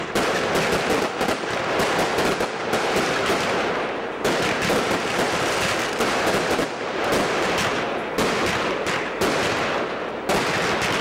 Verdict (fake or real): real